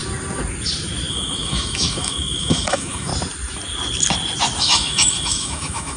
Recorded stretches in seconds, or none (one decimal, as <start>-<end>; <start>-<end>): 0.0-1.1; 3.1-4.6